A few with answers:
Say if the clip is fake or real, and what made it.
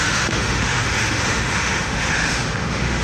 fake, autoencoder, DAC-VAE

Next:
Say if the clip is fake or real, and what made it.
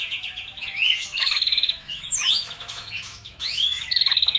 fake, autoencoder, DAC-VAE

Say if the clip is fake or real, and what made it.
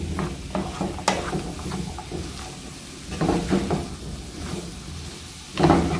real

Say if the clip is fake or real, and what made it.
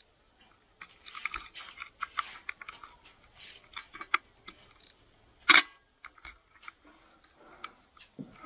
real